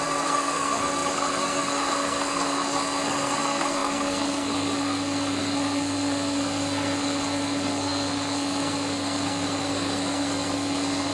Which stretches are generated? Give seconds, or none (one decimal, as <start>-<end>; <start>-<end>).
0.0-11.1